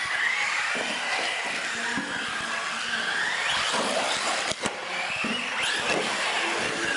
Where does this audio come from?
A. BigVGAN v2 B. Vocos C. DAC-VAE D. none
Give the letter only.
D